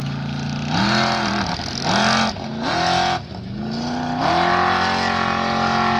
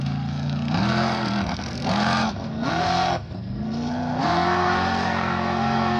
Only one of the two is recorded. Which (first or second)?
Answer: first